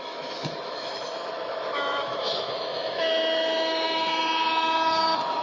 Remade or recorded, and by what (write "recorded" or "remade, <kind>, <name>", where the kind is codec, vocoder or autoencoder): remade, autoencoder, DAC-VAE